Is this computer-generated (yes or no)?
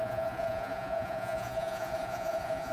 yes